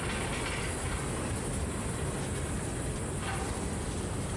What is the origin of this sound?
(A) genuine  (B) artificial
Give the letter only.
A